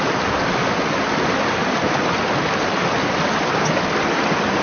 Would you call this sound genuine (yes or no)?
yes